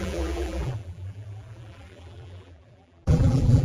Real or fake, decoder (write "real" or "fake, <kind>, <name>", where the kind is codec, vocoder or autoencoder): fake, vocoder, BigVGAN v2